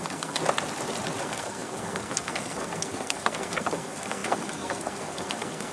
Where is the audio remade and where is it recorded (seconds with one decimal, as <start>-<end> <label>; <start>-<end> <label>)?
0.0-0.4 remade; 0.4-1.2 recorded; 1.2-5.7 remade